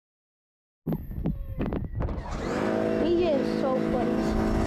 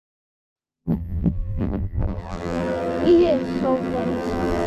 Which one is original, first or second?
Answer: first